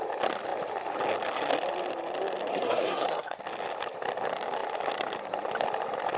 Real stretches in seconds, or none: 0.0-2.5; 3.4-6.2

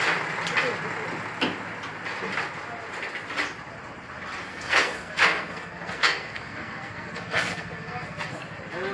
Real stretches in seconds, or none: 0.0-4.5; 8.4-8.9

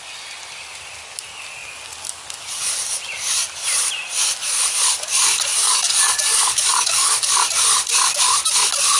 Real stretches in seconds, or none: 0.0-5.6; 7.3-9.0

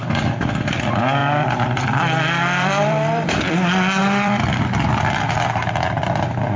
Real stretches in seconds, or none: 0.0-1.2; 3.5-4.0; 5.0-6.6

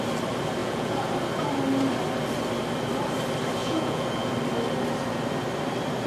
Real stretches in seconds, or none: 0.0-0.6; 1.1-3.6; 4.3-6.1